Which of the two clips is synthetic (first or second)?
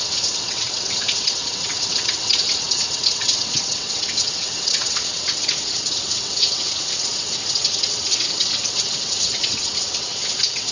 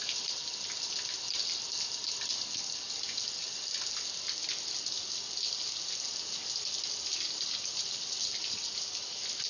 first